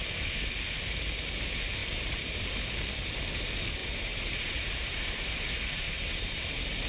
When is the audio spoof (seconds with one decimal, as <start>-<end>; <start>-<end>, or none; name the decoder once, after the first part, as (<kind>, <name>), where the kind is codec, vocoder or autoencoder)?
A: 1.8-2.5 (vocoder, BigVGAN v2); 3.8-6.5